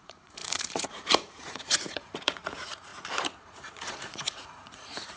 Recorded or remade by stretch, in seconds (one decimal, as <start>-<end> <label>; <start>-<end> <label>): 0.0-2.9 remade; 2.9-3.4 recorded; 3.4-5.2 remade